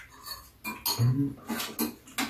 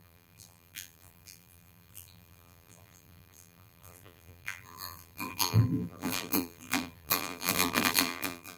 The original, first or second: first